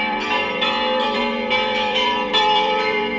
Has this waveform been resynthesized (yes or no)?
yes